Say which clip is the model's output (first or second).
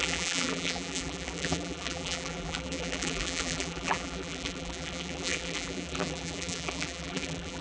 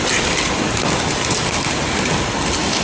first